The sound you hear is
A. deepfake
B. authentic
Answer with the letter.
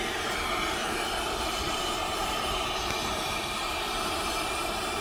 A